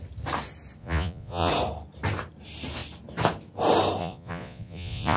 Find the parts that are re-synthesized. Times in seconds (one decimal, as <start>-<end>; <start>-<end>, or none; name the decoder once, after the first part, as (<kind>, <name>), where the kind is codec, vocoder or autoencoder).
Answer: 0.8-1.5 (vocoder, Vocos); 4.0-5.2